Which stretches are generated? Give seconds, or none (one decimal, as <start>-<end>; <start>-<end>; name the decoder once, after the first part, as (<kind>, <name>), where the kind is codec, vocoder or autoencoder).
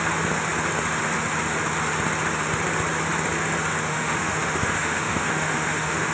3.9-6.1 (autoencoder, DAC-VAE)